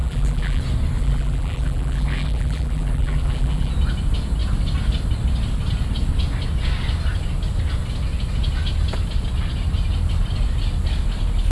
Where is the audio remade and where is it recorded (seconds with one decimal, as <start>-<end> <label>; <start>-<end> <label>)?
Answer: 0.0-0.6 remade; 0.6-1.0 recorded; 1.0-3.7 remade; 3.7-11.5 recorded